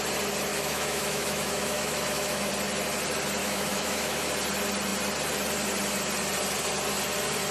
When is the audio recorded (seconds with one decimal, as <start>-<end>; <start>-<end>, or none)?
0.0-0.5; 2.5-3.4; 4.3-7.5

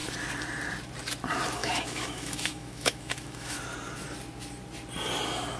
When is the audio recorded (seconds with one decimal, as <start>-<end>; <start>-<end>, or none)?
0.0-1.6; 3.6-5.6

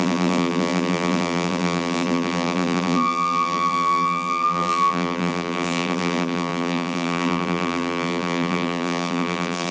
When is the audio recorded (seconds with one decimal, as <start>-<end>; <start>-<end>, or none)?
none

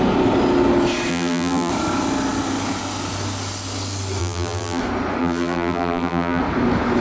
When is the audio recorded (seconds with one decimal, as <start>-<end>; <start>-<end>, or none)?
0.0-1.1; 1.7-4.2; 4.8-5.2; 6.4-7.0

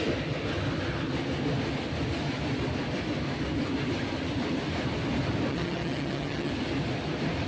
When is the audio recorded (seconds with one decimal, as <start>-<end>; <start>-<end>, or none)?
0.0-5.5; 6.5-7.5

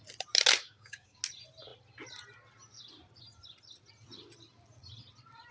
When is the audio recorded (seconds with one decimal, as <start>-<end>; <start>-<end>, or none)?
0.0-0.6; 1.2-5.5

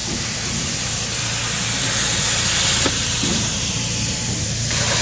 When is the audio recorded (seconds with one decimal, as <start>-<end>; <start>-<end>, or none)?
0.0-2.9

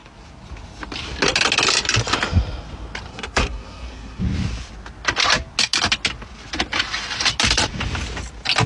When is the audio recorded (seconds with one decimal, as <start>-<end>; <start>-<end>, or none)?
0.0-3.1; 4.2-8.7